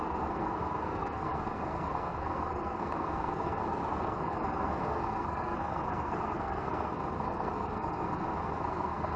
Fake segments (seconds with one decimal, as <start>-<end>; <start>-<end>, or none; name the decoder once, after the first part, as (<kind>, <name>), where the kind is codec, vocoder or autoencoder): 0.0-9.2 (codec, SNAC)